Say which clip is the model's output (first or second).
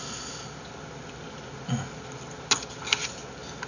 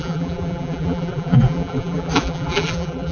second